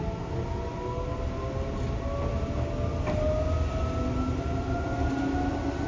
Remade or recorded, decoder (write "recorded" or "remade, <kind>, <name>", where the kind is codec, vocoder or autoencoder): recorded